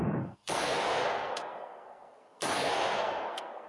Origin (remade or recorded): remade